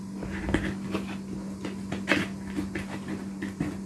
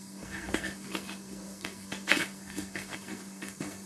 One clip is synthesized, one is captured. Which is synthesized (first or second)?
second